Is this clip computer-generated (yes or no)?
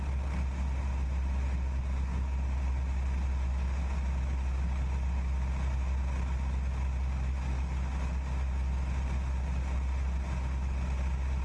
no